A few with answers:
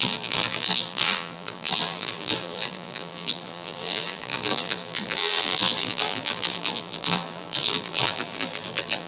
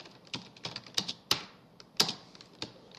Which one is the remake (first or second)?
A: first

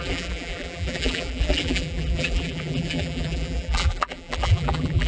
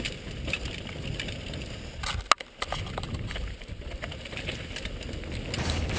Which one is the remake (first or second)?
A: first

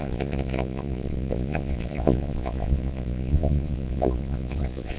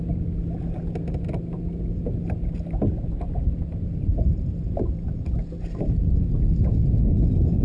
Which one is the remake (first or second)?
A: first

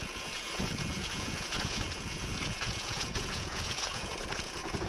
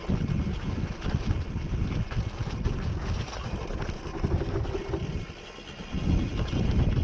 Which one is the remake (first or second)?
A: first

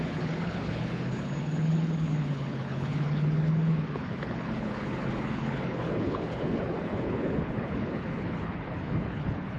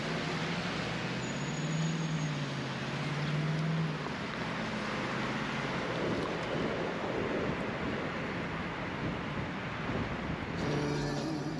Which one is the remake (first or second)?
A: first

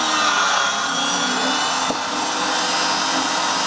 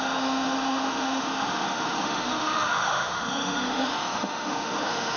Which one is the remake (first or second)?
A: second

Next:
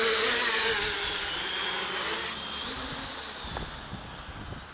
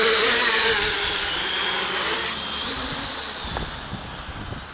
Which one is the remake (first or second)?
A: second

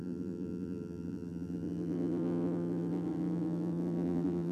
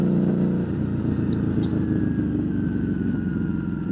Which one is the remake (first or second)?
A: first